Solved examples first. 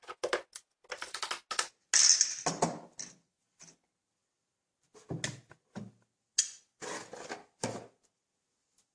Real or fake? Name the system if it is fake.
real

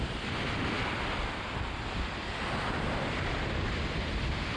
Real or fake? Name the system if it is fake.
real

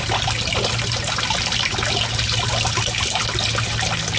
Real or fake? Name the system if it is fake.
real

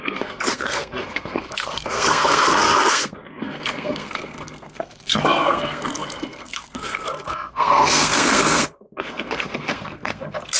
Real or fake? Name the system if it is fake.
fake, codec, SNAC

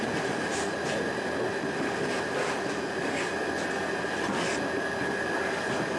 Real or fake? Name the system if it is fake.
real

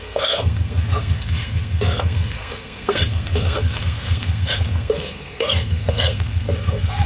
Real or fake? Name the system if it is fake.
fake, codec, SNAC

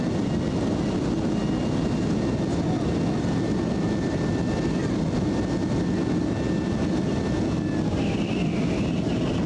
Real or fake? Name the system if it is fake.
real